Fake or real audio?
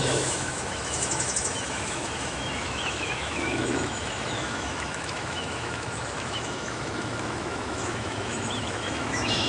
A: fake